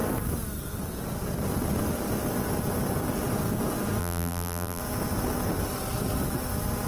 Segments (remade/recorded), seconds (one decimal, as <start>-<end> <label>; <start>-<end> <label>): 0.0-4.0 recorded; 4.0-4.8 remade; 4.8-6.9 recorded